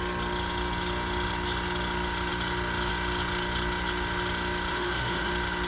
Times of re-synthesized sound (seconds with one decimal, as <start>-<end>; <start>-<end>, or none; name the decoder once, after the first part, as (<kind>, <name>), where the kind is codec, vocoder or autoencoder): 4.7-5.3 (autoencoder, DAC-VAE)

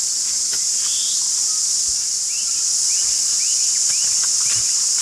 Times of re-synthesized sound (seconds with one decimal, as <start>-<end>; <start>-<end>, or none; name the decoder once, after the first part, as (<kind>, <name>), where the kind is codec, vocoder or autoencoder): none

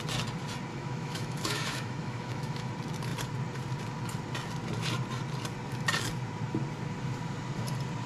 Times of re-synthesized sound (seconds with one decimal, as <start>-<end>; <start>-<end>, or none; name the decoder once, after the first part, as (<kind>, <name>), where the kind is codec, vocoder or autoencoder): 0.7-2.7 (autoencoder, DAC-VAE)

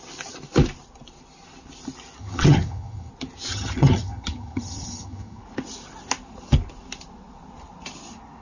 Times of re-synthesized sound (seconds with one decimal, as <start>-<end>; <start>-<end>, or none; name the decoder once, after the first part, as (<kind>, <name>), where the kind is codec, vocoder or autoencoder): 2.2-3.1 (vocoder, HiFi-GAN); 3.5-5.4

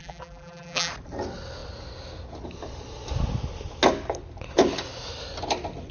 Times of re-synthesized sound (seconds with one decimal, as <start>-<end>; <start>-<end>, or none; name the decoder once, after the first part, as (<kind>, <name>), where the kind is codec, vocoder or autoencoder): 0.0-0.9 (vocoder, BigVGAN v2)